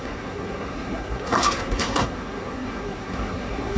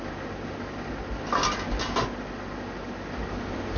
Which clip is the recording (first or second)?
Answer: second